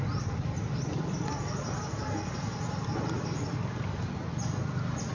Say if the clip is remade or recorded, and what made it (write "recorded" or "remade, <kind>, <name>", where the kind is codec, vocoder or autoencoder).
recorded